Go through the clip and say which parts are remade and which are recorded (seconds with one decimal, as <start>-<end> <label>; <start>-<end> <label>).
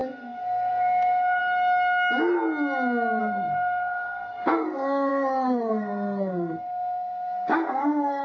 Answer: 0.0-1.4 remade; 1.4-3.2 recorded; 3.2-8.2 remade